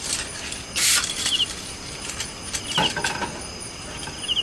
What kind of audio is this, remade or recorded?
recorded